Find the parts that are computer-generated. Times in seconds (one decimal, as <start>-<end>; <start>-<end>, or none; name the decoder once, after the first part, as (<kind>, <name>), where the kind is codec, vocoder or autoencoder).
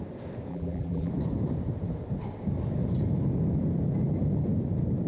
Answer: 0.5-1.1 (vocoder, BigVGAN v2)